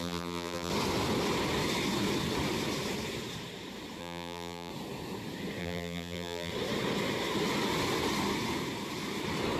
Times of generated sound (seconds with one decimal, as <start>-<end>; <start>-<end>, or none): 0.0-0.7; 4.0-4.7; 5.6-6.5